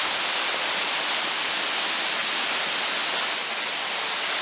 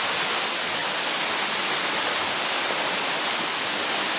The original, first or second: first